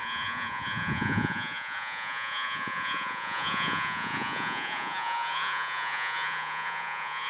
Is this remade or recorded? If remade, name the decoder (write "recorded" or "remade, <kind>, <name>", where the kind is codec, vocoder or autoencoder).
remade, vocoder, Vocos